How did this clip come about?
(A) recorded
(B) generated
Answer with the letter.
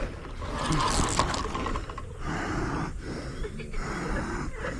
A